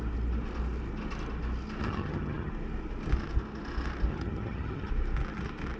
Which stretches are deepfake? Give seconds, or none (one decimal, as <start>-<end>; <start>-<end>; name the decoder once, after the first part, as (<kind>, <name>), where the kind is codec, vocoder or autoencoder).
1.8-2.5 (vocoder, HiFi-GAN); 4.1-4.9

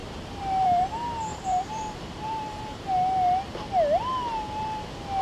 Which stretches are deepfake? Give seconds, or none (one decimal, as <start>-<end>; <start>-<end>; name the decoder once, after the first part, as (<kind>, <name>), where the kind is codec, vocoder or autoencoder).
0.0-0.8 (vocoder, BigVGAN v2); 1.3-2.9

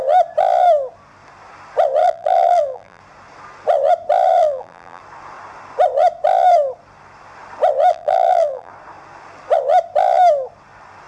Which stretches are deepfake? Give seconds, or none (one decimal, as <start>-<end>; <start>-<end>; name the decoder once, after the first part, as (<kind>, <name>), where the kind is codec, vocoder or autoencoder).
2.0-3.0 (vocoder, BigVGAN v2); 4.4-5.0; 7.9-8.7

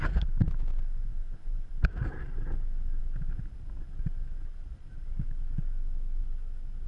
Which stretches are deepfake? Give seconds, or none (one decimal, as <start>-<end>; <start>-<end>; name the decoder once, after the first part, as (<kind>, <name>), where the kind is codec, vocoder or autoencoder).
1.1-1.7 (vocoder, Vocos)

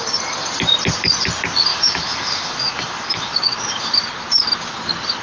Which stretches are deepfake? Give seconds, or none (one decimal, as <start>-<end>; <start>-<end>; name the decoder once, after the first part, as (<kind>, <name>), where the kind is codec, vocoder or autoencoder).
1.7-3.9 (autoencoder, DAC-VAE)